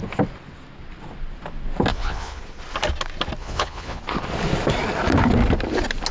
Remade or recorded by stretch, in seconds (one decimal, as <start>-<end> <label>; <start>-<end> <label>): 0.0-1.9 recorded; 1.9-2.4 remade; 2.4-3.4 recorded; 3.4-4.0 remade; 4.0-6.1 recorded